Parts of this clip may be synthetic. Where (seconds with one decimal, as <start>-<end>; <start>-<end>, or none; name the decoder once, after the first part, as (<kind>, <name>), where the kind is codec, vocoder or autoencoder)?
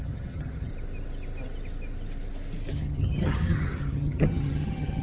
0.0-0.7 (vocoder, HiFi-GAN); 2.7-5.0